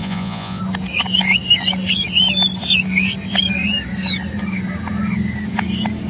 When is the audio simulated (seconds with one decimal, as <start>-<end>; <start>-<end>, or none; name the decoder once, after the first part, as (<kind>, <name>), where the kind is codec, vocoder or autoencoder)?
0.0-0.6 (vocoder, Vocos)